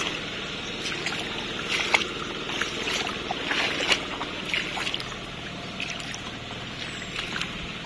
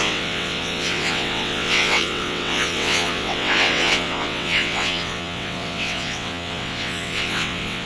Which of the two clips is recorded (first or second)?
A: first